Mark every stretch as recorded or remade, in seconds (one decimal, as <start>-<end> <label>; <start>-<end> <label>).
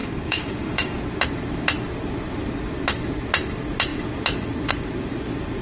0.0-1.0 remade; 1.0-5.6 recorded